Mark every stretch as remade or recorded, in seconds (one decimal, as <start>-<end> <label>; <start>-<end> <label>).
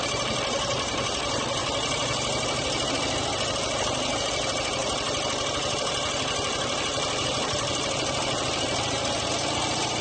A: 0.0-4.8 recorded; 4.8-5.9 remade; 5.9-10.0 recorded